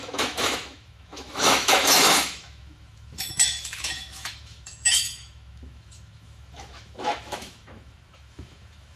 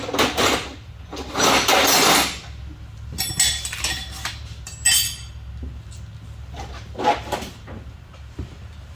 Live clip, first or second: second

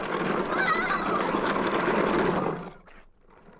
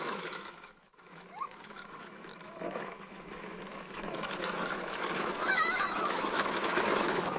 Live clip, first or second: first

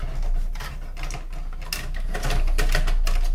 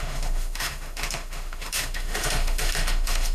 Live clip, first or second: first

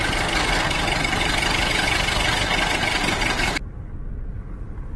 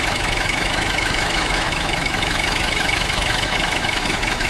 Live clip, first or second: first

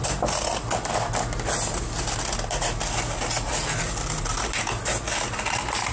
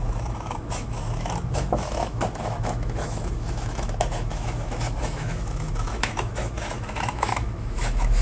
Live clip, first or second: first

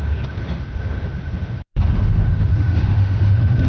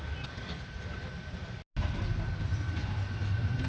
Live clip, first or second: second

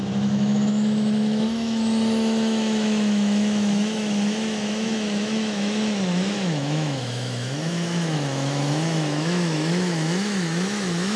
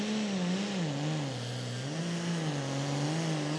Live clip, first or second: second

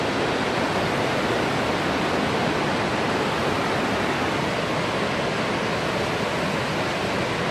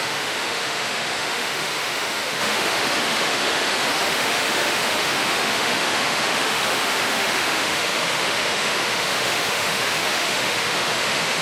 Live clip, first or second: first